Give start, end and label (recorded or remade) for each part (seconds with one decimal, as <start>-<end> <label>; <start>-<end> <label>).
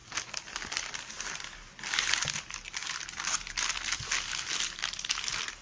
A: 0.0-5.6 recorded